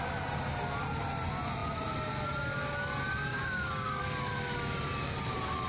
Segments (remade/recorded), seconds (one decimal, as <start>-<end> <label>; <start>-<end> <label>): 0.0-3.3 recorded; 3.3-4.0 remade; 4.0-5.7 recorded